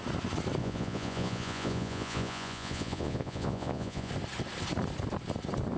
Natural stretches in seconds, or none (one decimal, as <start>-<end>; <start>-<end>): 0.0-0.6; 4.1-5.8